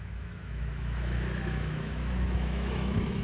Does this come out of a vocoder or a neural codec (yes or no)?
yes